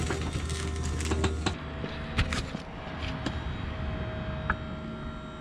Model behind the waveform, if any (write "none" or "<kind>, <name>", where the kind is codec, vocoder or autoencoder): none